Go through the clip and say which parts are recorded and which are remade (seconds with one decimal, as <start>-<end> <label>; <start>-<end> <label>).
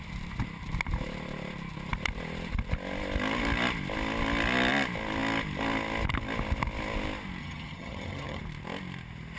0.0-7.4 recorded; 7.4-8.4 remade; 8.4-9.4 recorded